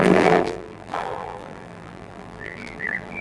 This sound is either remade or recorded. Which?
remade